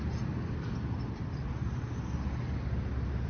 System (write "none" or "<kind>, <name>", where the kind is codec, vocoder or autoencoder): none